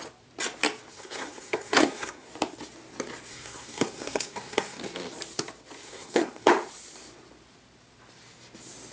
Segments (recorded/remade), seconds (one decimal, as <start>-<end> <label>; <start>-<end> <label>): 0.0-0.9 recorded; 0.9-2.3 remade; 2.3-3.3 recorded; 3.3-4.8 remade; 4.8-5.8 recorded; 5.8-6.5 remade; 6.5-8.9 recorded